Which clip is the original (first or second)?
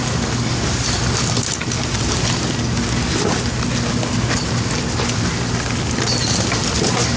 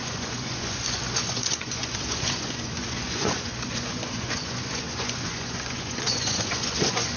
first